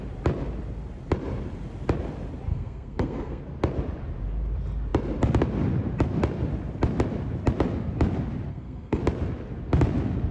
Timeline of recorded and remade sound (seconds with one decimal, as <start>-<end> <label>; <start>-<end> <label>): 0.0-2.5 recorded; 2.5-3.4 remade; 3.4-8.5 recorded; 8.5-9.0 remade; 9.0-10.3 recorded